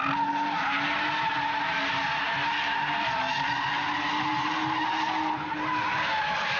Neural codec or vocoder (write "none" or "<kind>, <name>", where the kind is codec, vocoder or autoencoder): none